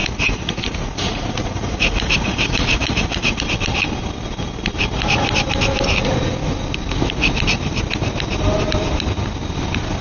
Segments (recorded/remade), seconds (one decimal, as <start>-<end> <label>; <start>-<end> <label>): 0.0-3.4 remade; 3.4-10.0 recorded